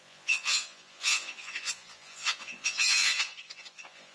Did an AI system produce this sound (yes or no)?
yes